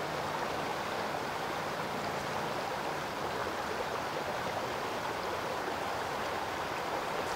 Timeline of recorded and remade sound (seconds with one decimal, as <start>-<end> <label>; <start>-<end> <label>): 0.0-0.7 recorded; 0.7-2.8 remade; 2.8-3.4 recorded; 3.4-7.4 remade